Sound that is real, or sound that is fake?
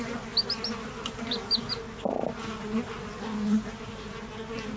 real